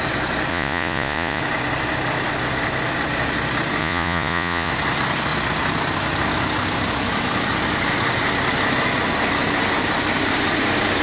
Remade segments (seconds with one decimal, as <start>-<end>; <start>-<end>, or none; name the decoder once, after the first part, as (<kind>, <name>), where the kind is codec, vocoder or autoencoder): 0.5-1.4 (vocoder, Vocos); 3.8-4.7